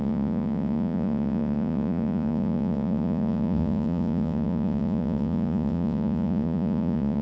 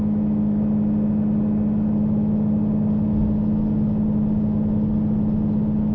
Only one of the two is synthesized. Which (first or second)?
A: first